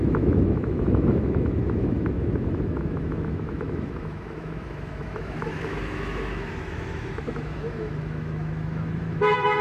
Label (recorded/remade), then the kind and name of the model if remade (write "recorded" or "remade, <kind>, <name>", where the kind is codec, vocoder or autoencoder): remade, autoencoder, DAC-VAE